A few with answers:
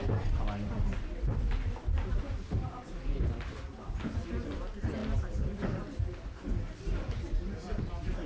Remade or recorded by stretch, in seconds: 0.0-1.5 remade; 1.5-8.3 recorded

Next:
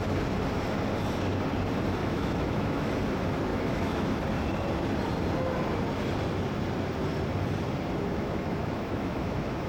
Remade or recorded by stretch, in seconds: 0.0-2.0 recorded; 2.0-2.9 remade; 2.9-3.5 recorded; 3.5-4.1 remade; 4.1-8.1 recorded; 8.1-9.7 remade

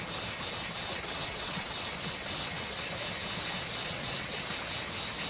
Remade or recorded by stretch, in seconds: 0.0-0.9 recorded; 0.9-2.9 remade; 2.9-3.8 recorded; 3.8-4.5 remade; 4.5-5.3 recorded

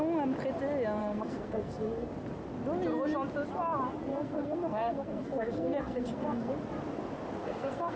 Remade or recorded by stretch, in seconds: 0.0-1.0 recorded; 1.0-2.1 remade; 2.1-4.1 recorded; 4.1-6.5 remade; 6.5-7.4 recorded; 7.4-8.0 remade

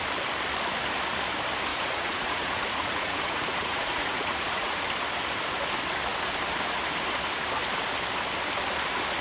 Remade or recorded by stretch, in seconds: 0.0-1.7 recorded; 1.7-4.9 remade; 4.9-9.2 recorded